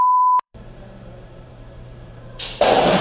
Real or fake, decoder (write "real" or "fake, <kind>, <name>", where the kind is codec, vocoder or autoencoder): fake, vocoder, BigVGAN v2